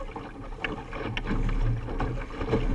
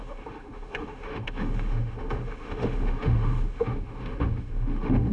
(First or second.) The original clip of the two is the first